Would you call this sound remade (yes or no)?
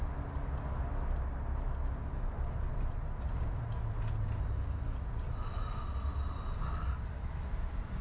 no